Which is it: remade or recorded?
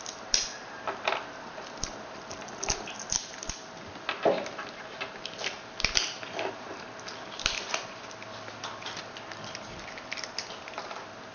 remade